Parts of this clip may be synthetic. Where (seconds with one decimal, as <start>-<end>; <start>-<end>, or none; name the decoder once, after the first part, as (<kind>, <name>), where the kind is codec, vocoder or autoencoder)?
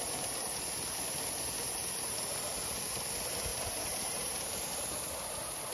3.5-4.5 (vocoder, BigVGAN v2)